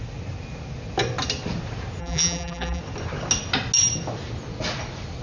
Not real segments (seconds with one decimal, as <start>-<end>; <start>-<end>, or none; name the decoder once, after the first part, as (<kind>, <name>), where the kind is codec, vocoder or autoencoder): 2.0-2.8 (vocoder, BigVGAN v2)